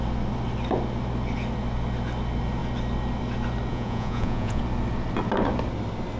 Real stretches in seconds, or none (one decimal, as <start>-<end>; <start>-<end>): 0.0-3.7; 4.6-6.2